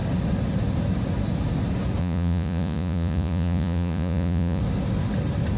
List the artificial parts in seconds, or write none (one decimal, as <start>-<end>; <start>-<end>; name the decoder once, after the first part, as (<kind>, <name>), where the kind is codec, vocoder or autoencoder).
2.0-4.6 (vocoder, Vocos)